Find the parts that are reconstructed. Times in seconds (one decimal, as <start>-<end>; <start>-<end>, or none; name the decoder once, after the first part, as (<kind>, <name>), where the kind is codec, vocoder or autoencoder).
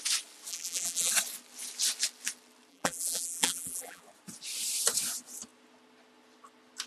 0.5-1.1 (vocoder, BigVGAN v2); 2.7-4.0